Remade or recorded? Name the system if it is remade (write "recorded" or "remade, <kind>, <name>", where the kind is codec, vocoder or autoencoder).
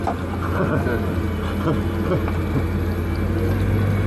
recorded